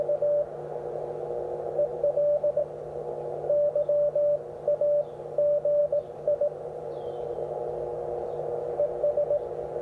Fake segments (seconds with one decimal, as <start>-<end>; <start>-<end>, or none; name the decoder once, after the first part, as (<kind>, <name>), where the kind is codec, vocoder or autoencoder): 1.9-2.6 (vocoder, BigVGAN v2); 5.8-7.4